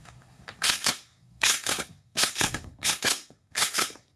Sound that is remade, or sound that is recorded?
remade